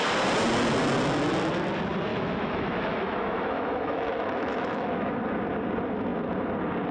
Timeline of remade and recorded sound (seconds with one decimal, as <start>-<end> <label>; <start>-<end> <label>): 0.0-2.1 recorded; 2.1-5.2 remade; 5.2-6.9 recorded